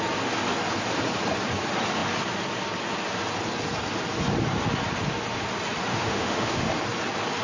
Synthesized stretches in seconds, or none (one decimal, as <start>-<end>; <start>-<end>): 5.9-6.7